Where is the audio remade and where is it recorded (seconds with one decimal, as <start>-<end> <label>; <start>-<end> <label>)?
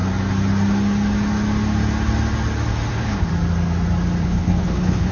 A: 0.0-2.9 recorded; 2.9-3.3 remade; 3.3-4.2 recorded; 4.2-5.1 remade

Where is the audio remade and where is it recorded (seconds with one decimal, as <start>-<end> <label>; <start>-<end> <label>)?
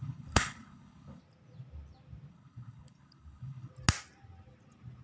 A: 0.0-1.2 remade; 1.2-2.3 recorded; 2.3-3.7 remade; 3.7-5.0 recorded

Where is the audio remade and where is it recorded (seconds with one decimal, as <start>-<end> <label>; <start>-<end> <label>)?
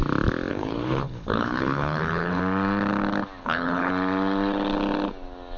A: 0.0-0.5 recorded; 0.5-2.4 remade; 2.4-3.4 recorded; 3.4-3.9 remade; 3.9-5.6 recorded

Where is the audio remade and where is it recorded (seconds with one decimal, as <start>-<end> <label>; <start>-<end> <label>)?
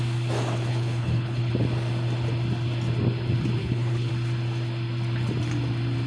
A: 0.0-0.7 recorded; 0.7-1.5 remade; 1.5-3.6 recorded; 3.6-4.1 remade; 4.1-6.1 recorded